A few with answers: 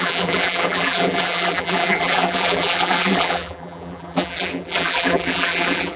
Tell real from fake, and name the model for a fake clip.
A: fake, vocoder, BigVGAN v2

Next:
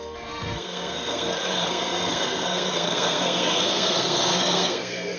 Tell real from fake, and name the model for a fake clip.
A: fake, codec, SNAC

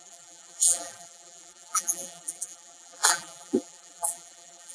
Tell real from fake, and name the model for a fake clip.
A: fake, vocoder, BigVGAN v2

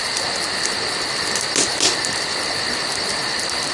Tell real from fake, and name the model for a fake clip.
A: real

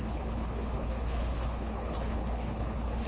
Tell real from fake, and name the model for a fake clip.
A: fake, codec, HILCodec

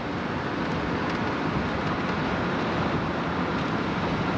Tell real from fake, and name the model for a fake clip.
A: real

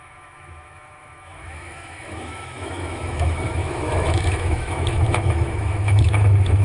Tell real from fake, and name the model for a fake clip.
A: fake, autoencoder, DAC-VAE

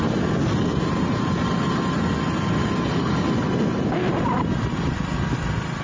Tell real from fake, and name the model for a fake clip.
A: real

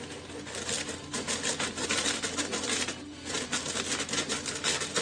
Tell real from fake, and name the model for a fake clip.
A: real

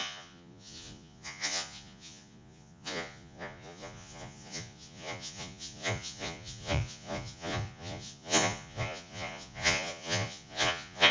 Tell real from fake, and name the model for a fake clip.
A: fake, vocoder, Vocos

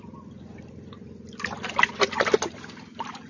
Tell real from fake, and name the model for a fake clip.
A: real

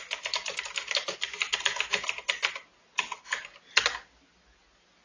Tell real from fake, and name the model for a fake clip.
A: real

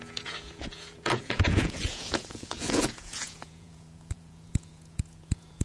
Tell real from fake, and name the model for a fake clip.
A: fake, vocoder, Vocos